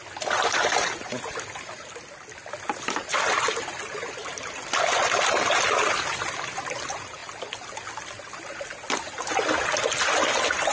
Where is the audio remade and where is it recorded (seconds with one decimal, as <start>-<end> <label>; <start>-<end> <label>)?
0.0-10.7 recorded